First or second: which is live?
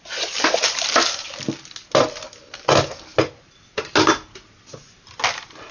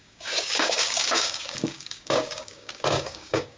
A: first